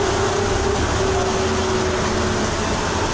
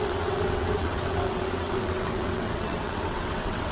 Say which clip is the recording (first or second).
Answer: first